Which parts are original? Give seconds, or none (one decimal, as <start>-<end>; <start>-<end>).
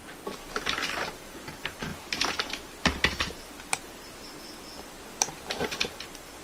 0.0-1.9; 4.3-6.4